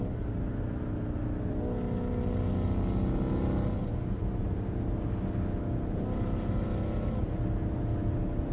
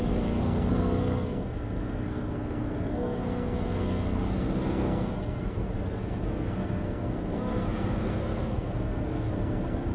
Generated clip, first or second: second